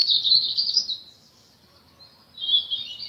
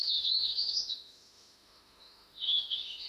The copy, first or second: second